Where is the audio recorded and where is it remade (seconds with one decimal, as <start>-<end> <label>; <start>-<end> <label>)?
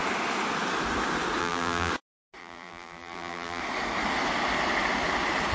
0.0-1.4 recorded; 1.4-1.9 remade; 1.9-2.4 recorded; 2.4-3.6 remade; 3.6-5.5 recorded